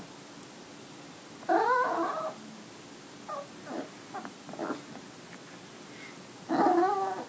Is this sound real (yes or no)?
yes